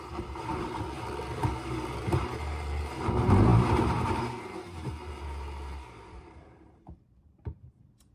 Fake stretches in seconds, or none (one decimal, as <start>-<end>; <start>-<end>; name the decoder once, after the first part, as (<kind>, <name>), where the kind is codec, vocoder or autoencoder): 0.0-0.5 (vocoder, BigVGAN v2); 2.0-8.1